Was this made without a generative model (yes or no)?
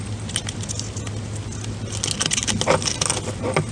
yes